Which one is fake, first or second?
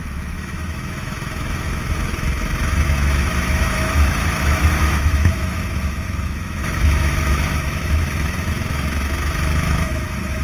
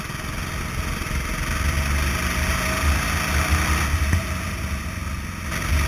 first